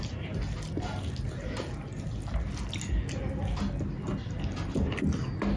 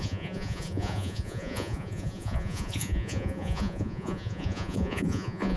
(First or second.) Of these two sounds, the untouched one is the first